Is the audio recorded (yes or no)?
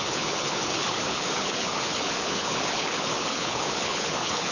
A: no